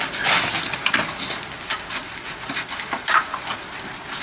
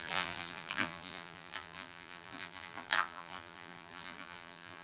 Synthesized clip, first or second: second